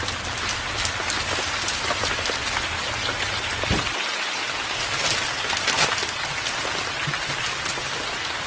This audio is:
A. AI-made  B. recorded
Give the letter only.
B